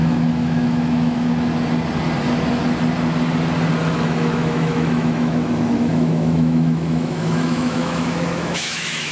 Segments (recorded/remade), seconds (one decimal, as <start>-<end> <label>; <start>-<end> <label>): 0.0-1.3 remade; 1.3-3.8 recorded; 3.8-9.1 remade